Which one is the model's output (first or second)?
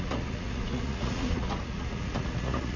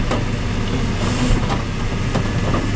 first